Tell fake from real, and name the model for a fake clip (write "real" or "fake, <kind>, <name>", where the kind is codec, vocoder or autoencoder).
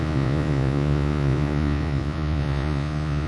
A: fake, vocoder, Vocos